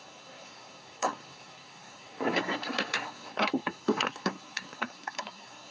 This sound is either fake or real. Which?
fake